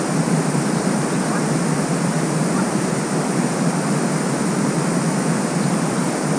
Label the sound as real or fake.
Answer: fake